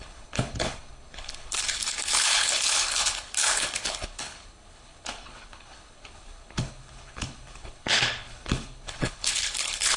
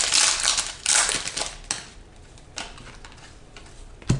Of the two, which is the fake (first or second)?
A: first